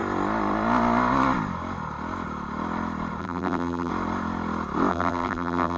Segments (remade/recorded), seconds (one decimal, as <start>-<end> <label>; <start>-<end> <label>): 0.0-3.2 recorded; 3.2-3.9 remade; 3.9-4.9 recorded; 4.9-5.8 remade